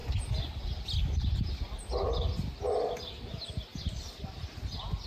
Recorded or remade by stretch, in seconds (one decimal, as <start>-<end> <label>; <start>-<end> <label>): 0.0-5.1 recorded